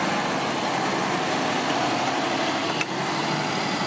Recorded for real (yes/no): yes